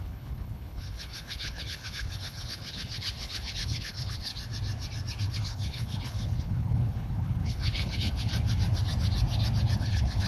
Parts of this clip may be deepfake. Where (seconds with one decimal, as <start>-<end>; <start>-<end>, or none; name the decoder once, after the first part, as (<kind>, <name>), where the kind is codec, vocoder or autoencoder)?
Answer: 0.0-4.3 (codec, HILCodec); 5.2-8.3; 9.8-10.3